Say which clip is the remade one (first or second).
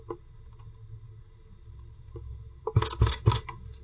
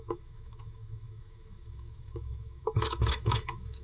second